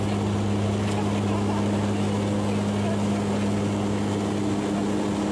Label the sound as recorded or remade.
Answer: recorded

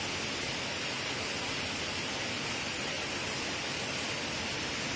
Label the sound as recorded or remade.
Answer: recorded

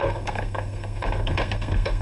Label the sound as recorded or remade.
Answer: remade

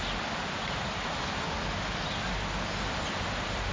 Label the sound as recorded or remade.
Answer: recorded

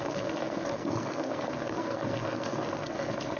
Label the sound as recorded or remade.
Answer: remade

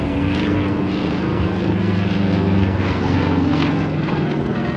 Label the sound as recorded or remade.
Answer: remade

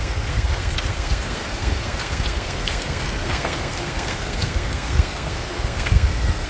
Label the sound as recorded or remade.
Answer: remade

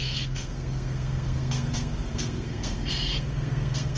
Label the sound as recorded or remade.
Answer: remade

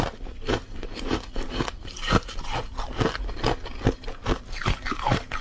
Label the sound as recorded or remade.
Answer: recorded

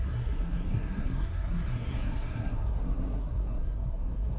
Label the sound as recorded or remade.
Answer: remade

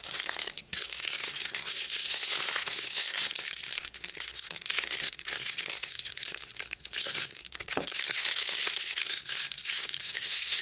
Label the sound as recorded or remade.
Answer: remade